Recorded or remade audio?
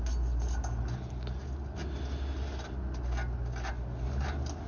recorded